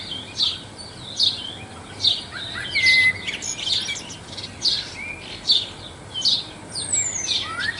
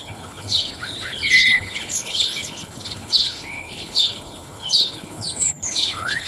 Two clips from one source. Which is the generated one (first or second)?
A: second